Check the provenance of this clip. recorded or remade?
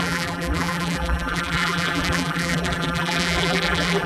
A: remade